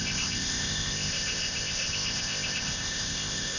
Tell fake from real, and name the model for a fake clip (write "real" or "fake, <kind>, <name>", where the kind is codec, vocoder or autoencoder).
fake, codec, ZipCodec